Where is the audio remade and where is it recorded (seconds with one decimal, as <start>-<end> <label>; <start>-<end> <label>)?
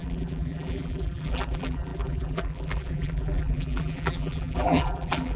0.0-5.4 remade